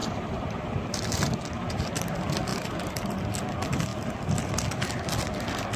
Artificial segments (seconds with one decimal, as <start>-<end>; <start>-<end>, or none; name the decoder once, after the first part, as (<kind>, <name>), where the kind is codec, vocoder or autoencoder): none